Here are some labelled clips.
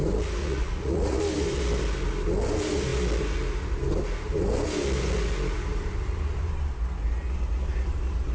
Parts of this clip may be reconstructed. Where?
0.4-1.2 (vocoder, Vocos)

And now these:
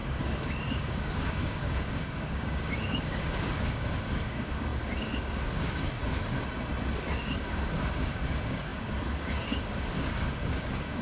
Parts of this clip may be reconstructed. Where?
0.0-6.0 (codec, DAC); 7.1-11.0

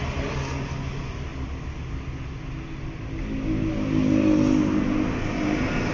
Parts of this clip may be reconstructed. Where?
none

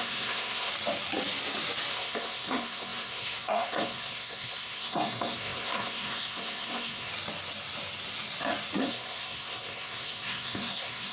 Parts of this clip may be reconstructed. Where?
0.0-0.7 (codec, SNAC); 1.9-7.1; 8.8-11.1

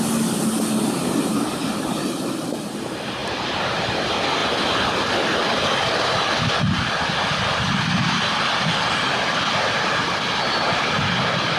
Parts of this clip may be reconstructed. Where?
3.2-3.8 (vocoder, BigVGAN v2)